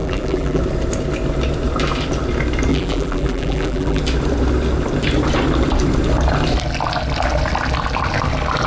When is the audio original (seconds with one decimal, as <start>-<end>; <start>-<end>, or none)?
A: 0.6-2.7; 4.0-8.7